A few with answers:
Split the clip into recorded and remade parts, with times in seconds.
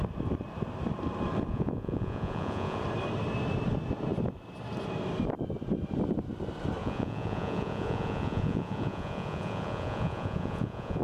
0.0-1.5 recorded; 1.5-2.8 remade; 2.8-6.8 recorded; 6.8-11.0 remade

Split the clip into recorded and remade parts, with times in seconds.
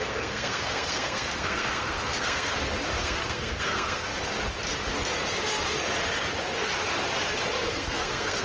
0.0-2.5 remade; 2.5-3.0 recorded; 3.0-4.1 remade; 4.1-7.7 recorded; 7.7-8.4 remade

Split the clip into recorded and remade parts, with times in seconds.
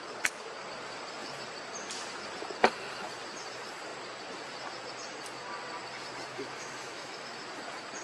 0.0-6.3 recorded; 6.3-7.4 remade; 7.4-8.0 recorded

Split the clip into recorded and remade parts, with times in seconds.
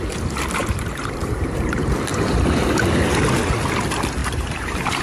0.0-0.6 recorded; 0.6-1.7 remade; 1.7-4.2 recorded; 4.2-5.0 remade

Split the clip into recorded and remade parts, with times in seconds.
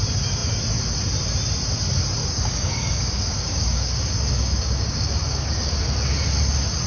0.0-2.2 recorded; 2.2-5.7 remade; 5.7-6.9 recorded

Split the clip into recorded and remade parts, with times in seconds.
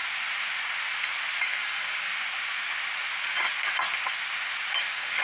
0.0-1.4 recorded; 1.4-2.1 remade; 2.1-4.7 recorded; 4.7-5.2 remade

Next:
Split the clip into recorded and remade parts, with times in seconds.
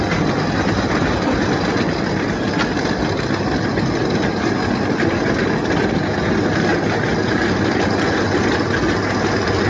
0.0-9.7 recorded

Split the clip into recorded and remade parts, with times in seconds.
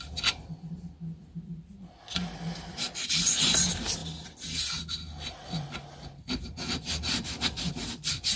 0.0-8.4 recorded